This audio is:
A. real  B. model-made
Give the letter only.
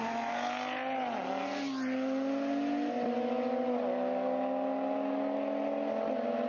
A